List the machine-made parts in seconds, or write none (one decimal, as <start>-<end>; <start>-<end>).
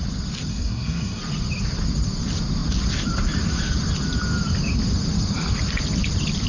0.5-1.2